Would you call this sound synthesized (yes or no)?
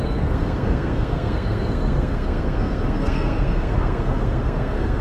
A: yes